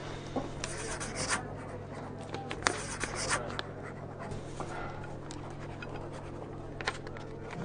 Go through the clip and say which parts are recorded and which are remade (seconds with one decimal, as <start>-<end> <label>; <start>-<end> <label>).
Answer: 0.0-7.6 recorded